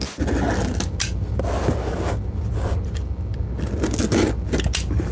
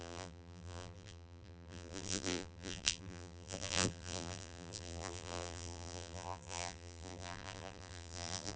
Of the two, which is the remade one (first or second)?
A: second